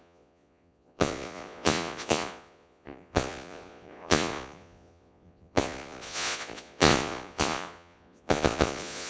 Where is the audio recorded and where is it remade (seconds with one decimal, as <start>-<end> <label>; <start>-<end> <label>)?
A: 0.0-9.1 remade